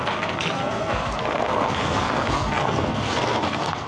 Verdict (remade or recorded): remade